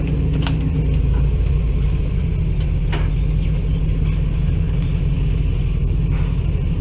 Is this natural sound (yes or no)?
yes